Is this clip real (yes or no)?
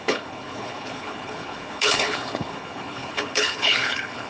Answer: no